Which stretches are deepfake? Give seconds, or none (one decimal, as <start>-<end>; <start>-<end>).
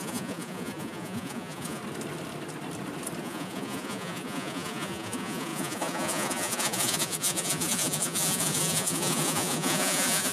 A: 0.0-1.8; 3.2-10.3